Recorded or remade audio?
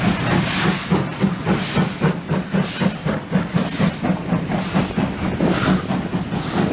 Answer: recorded